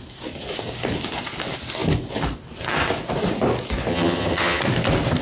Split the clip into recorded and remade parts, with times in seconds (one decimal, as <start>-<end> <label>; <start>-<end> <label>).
0.0-3.9 recorded; 3.9-4.6 remade; 4.6-5.2 recorded